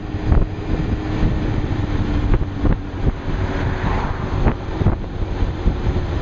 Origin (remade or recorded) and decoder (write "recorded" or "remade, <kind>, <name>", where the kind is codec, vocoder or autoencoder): recorded